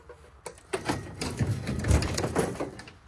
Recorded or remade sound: recorded